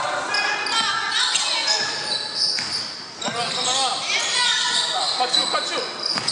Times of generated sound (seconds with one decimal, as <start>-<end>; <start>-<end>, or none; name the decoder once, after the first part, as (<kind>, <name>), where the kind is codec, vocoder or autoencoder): none